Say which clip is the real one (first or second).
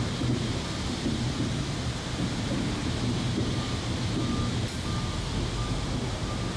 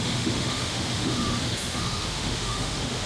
first